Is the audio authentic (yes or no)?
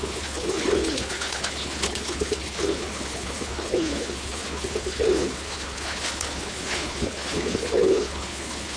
no